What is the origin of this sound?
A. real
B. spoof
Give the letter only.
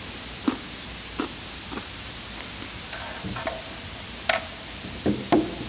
A